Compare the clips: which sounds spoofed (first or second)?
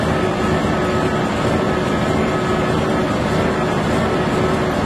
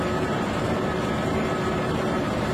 second